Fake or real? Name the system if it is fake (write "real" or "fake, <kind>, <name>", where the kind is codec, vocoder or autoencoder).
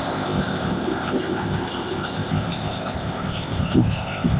fake, codec, ZipCodec